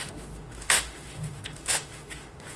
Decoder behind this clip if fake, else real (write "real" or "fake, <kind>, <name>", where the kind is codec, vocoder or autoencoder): fake, autoencoder, DAC-VAE